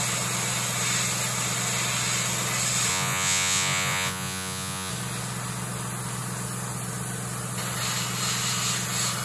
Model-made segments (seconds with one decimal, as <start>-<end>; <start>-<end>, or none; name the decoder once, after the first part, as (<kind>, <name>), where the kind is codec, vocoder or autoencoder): 2.9-4.9 (vocoder, Vocos)